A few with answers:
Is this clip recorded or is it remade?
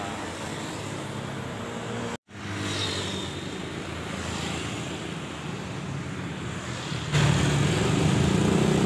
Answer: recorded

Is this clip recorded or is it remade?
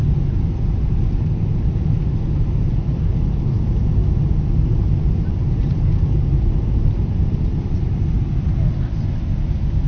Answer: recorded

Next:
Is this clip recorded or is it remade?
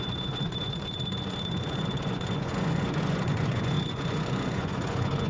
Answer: remade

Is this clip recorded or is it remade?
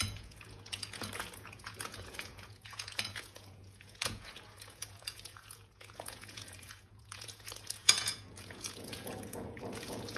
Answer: remade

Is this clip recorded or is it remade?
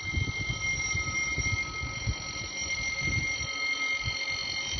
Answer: recorded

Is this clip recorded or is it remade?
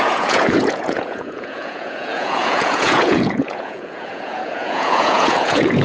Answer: remade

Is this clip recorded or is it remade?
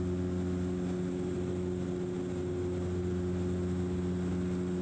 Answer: recorded